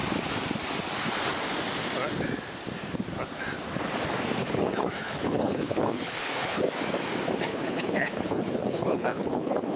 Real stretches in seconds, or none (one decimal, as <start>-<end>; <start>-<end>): 0.0-4.4; 6.6-7.5